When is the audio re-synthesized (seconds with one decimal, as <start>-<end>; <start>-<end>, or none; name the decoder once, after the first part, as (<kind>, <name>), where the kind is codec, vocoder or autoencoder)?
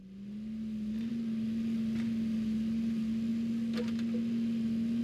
none